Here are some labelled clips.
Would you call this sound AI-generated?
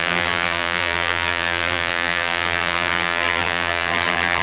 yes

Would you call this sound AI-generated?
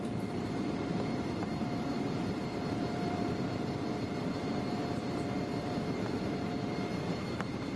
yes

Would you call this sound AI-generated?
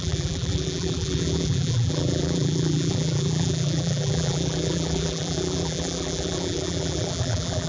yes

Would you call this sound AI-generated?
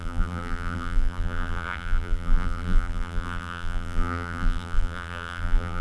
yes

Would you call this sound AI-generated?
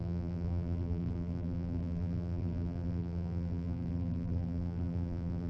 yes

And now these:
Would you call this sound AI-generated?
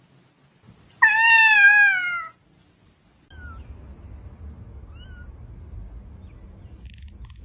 no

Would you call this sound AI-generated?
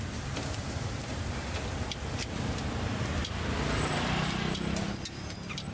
no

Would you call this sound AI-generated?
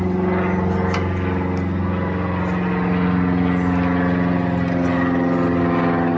no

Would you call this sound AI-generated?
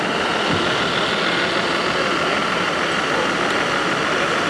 no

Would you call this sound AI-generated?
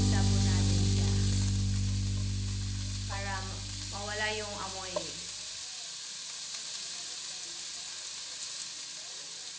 no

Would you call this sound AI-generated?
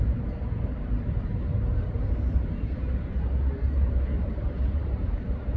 yes